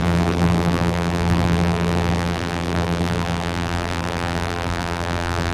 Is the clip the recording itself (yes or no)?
no